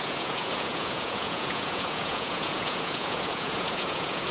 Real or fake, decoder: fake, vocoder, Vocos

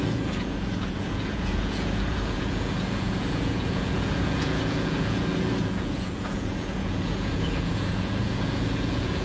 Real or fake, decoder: fake, vocoder, Vocos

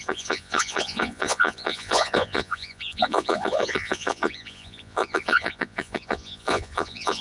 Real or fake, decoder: fake, vocoder, Vocos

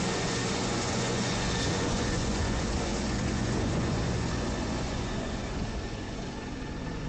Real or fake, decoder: fake, vocoder, Vocos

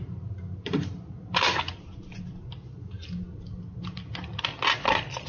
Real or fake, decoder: real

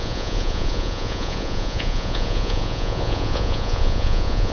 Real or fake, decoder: fake, vocoder, Vocos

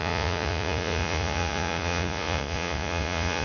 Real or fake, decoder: fake, vocoder, Vocos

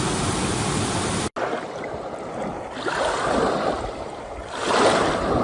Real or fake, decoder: real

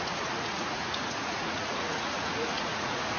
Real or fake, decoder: fake, vocoder, Vocos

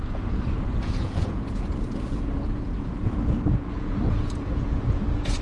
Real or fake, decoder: fake, vocoder, Vocos